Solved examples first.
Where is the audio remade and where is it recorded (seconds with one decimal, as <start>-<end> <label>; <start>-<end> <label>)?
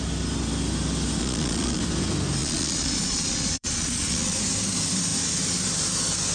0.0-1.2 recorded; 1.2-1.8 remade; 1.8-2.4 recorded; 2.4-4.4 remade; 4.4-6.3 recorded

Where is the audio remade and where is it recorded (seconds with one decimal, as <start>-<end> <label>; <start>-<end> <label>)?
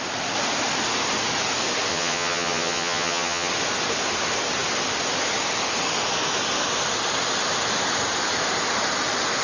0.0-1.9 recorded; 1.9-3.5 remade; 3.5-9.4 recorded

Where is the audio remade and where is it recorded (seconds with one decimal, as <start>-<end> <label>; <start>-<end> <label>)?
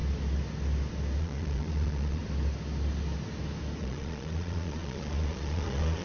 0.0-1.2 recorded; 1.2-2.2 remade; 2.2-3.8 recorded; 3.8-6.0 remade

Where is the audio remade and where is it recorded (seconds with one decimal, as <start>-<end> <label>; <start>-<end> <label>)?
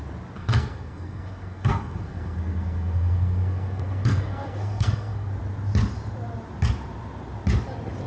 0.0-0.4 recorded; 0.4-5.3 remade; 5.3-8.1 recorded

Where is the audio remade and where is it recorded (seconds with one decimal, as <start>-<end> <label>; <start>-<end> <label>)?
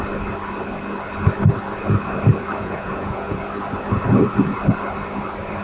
0.0-2.6 recorded; 2.6-3.4 remade; 3.4-5.6 recorded